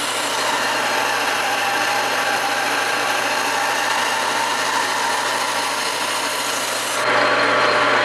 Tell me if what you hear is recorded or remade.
recorded